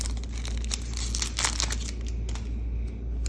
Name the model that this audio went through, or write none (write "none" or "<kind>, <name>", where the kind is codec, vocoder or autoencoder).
none